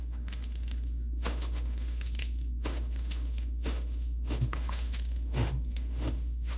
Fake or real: fake